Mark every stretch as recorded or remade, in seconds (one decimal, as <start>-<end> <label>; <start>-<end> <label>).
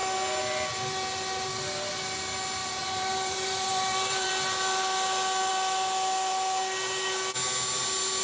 0.0-2.6 recorded; 2.6-4.3 remade; 4.3-8.2 recorded